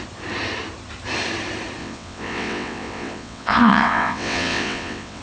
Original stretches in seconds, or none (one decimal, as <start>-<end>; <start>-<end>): 0.0-1.8